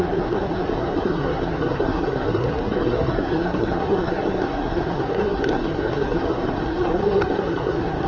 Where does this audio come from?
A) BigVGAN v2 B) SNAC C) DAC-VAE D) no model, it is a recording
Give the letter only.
B